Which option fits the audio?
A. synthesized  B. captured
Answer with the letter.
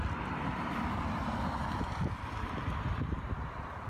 B